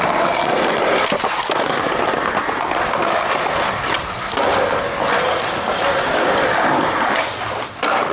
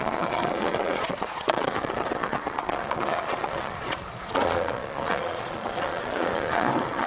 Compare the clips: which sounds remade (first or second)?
second